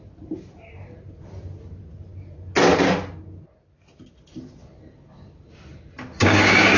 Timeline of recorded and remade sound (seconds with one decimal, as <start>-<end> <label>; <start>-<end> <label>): 0.0-6.1 recorded; 6.1-6.8 remade